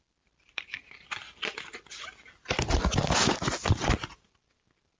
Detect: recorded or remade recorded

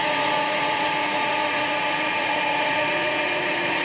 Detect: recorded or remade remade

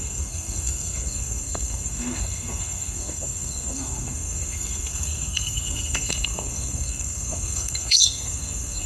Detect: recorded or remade remade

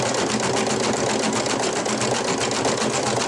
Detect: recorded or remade recorded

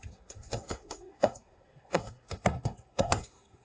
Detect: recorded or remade remade